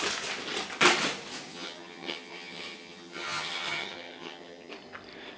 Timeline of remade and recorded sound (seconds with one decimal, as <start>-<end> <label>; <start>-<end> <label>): 0.0-1.5 recorded; 1.5-4.7 remade; 4.7-5.4 recorded